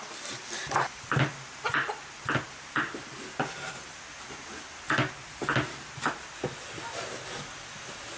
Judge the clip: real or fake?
real